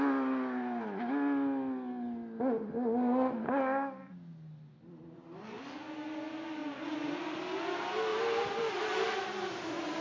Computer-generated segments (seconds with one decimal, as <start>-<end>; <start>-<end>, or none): none